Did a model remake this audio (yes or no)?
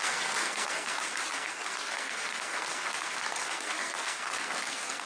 yes